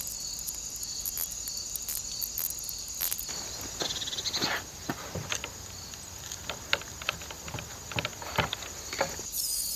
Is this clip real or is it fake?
real